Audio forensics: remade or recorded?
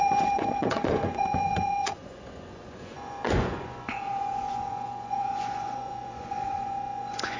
remade